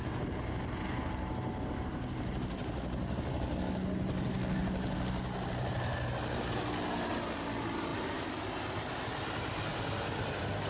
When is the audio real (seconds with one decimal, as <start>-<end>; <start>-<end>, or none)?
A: 0.0-10.7